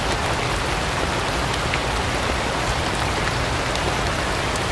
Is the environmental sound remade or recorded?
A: recorded